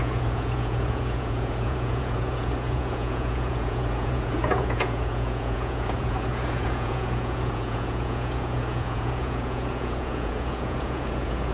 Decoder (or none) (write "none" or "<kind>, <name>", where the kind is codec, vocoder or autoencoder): vocoder, Vocos